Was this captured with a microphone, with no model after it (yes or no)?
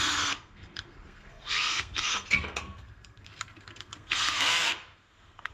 no